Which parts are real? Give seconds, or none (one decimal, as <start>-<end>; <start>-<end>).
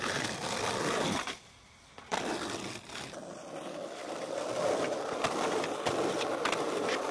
0.0-7.1